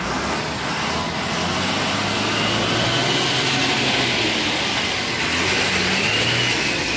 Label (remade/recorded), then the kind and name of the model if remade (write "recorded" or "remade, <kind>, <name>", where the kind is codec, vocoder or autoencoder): recorded